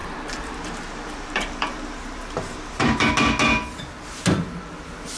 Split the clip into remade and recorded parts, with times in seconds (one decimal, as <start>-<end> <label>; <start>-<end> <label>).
0.0-3.1 remade; 3.1-5.2 recorded